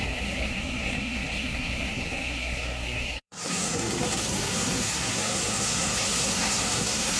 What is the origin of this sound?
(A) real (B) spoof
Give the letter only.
B